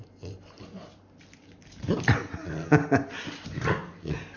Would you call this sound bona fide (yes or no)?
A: yes